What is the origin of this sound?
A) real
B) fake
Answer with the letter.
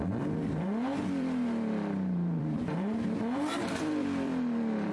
B